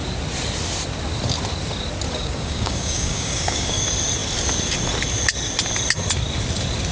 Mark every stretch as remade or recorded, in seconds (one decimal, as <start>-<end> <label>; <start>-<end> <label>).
0.0-2.1 recorded; 2.1-3.8 remade; 3.8-6.9 recorded